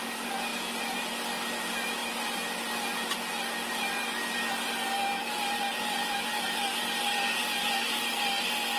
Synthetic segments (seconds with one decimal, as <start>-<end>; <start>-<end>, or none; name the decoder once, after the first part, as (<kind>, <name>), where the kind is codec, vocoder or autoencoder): none